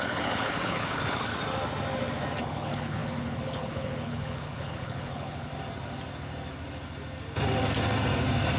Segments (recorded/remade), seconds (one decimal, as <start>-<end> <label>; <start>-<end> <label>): 0.0-1.3 remade; 1.3-2.4 recorded; 2.4-5.5 remade; 5.5-8.6 recorded